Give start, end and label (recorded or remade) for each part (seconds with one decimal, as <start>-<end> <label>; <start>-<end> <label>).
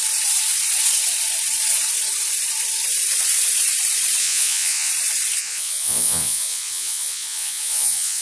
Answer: 0.0-4.2 recorded; 4.2-4.9 remade; 4.9-5.4 recorded; 5.4-8.2 remade